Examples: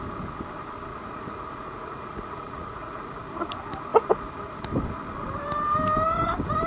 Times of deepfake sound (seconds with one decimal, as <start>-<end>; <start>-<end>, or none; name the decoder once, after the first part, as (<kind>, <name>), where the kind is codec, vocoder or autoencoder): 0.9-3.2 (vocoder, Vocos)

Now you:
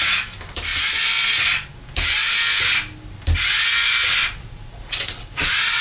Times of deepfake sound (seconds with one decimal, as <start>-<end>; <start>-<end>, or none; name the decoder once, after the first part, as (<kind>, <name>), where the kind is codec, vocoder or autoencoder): 4.2-5.8 (vocoder, Vocos)

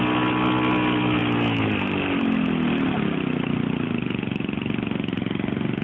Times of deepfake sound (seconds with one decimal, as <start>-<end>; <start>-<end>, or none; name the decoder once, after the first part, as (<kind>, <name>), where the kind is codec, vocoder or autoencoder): none